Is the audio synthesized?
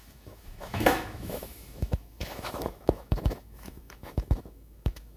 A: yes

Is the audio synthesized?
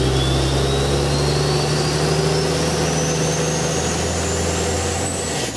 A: no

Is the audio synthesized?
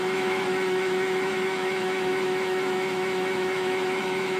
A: yes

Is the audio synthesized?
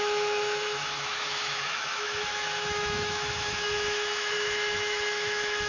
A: yes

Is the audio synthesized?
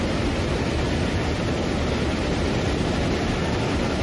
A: no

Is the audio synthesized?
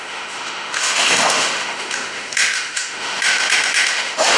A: yes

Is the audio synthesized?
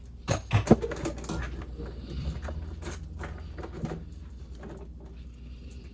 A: no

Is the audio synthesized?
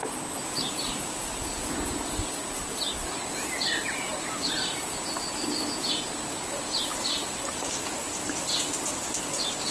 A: no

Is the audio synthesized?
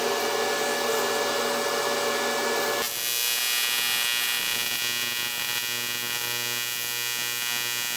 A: no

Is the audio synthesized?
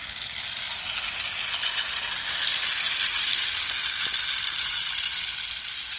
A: no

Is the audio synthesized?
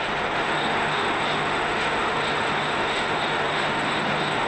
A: yes